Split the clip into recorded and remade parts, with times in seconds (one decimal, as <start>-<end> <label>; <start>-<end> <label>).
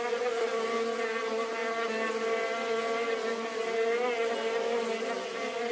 0.0-5.7 recorded